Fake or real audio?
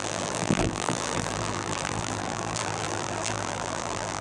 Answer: fake